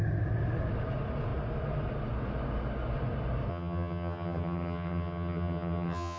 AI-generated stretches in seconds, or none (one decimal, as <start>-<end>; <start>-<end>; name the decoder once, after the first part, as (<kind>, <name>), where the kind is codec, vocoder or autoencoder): 3.5-6.2 (vocoder, HiFi-GAN)